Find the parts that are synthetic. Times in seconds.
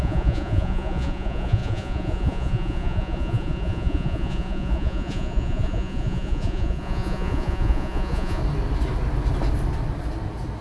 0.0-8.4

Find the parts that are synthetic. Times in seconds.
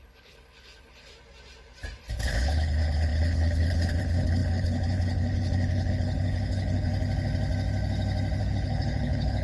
0.0-1.1; 2.0-6.9; 8.4-9.4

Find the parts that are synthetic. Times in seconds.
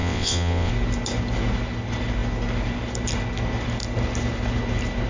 0.0-0.7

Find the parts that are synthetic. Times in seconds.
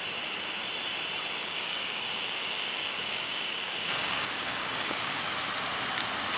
1.4-5.2